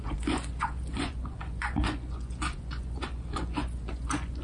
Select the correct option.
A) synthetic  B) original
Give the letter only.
A